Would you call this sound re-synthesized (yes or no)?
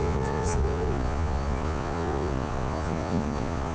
yes